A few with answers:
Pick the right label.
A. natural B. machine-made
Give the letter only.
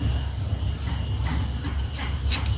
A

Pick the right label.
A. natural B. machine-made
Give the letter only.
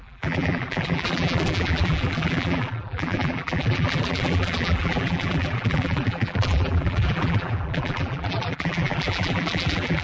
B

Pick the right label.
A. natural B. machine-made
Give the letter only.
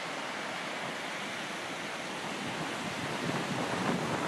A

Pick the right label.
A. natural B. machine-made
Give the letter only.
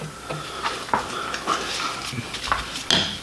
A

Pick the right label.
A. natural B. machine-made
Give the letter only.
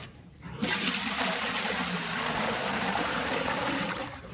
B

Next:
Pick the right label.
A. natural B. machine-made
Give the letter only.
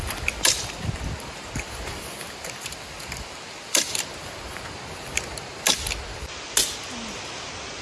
A